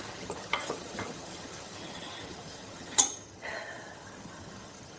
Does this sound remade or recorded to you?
remade